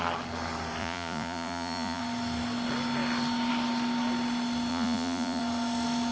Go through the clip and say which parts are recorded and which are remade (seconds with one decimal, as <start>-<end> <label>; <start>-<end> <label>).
0.0-0.8 recorded; 0.8-2.0 remade; 2.0-4.7 recorded; 4.7-5.4 remade; 5.4-6.1 recorded